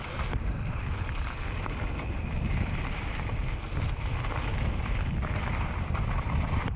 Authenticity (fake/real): fake